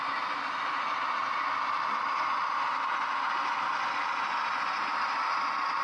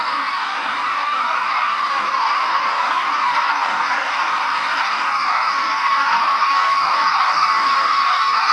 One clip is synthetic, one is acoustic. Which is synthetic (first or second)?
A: second